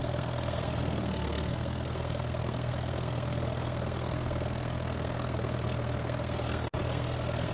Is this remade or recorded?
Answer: remade